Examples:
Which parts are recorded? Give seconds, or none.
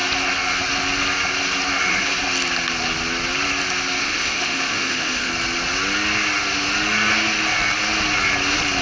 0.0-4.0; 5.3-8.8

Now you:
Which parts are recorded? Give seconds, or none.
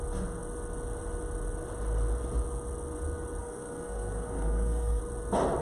0.0-3.4; 5.0-5.6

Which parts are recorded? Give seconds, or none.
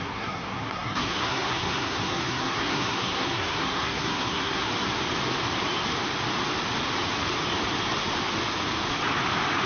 4.7-9.7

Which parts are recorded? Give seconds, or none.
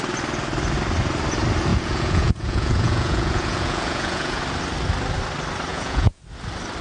0.0-1.7; 4.4-5.7; 6.2-6.8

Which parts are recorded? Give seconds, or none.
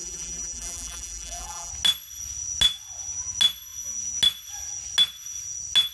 1.7-5.9